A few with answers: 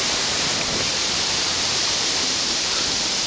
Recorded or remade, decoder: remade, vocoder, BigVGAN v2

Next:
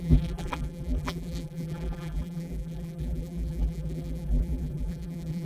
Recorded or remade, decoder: remade, vocoder, BigVGAN v2